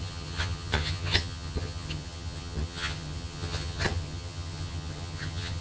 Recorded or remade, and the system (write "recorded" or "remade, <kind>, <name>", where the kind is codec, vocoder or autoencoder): remade, vocoder, HiFi-GAN